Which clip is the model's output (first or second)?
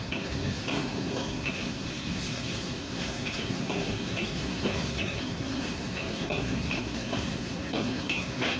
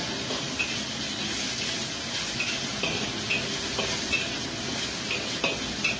first